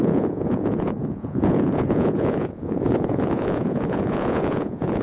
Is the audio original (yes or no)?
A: no